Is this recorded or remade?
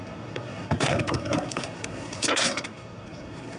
remade